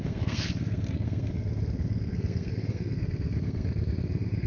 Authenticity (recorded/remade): remade